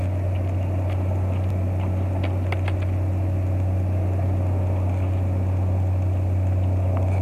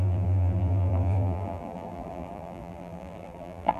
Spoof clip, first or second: second